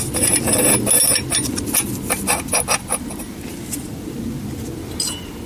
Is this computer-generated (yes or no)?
no